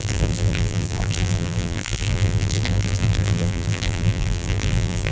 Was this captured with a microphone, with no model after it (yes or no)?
no